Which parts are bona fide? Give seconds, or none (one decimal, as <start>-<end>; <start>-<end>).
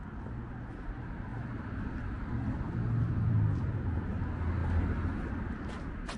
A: 0.0-6.2